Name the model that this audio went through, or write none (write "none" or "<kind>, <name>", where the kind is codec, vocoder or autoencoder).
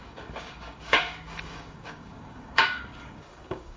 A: codec, DAC